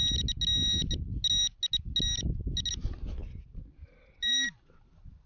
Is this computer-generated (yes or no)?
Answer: no